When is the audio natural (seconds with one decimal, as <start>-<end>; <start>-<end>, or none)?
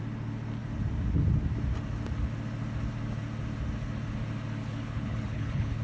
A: 0.0-4.6